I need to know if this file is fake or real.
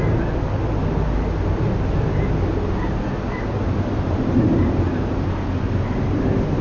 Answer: real